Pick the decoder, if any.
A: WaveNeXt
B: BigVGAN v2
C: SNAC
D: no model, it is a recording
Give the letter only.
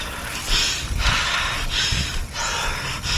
D